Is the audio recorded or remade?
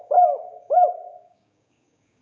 remade